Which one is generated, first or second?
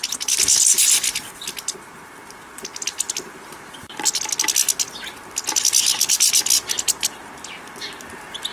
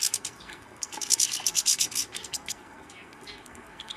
second